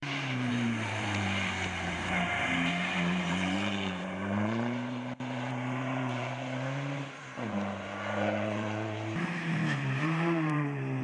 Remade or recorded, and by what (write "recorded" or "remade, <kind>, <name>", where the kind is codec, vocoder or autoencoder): remade, vocoder, BigVGAN v2